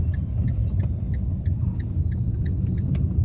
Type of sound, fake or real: real